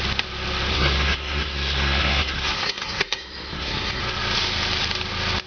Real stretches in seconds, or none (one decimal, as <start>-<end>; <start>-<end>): 0.0-0.7; 4.0-5.5